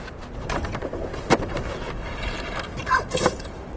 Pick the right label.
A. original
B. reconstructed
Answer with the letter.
B